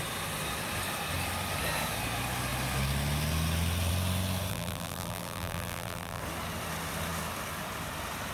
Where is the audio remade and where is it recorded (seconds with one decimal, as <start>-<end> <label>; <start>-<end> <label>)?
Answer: 0.0-4.5 recorded; 4.5-6.2 remade; 6.2-8.3 recorded